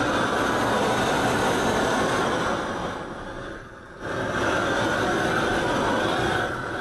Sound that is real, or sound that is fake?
fake